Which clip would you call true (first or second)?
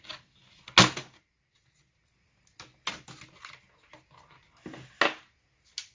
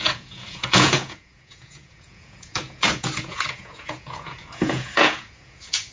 first